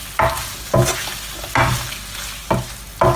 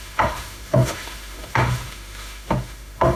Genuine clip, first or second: first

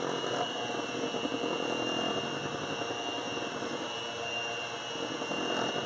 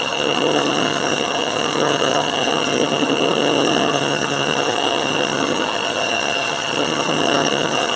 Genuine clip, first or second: first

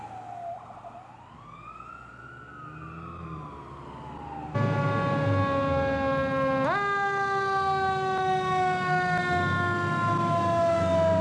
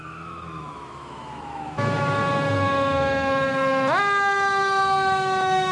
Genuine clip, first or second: first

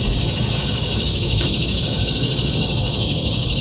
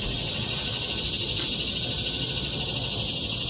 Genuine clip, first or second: second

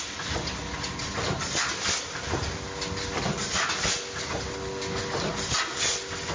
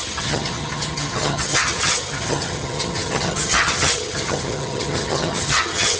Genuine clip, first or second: first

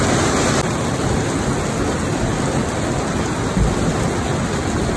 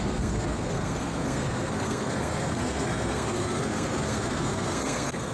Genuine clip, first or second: first